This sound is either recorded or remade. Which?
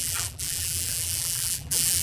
remade